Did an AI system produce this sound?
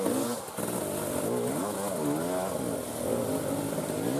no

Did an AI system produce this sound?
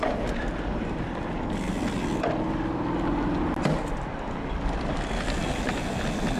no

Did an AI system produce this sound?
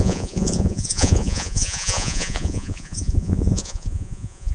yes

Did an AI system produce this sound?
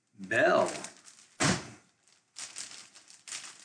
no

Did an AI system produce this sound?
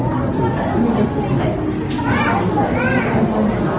no